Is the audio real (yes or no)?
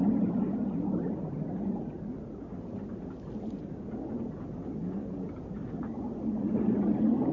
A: yes